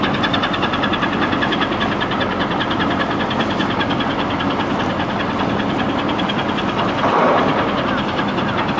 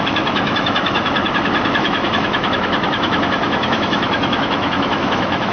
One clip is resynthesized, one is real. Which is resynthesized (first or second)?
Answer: second